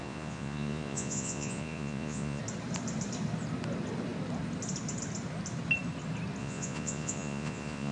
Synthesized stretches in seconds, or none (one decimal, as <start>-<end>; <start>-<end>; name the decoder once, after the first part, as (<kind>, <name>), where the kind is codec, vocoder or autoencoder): 0.0-2.4 (vocoder, Vocos); 6.4-7.9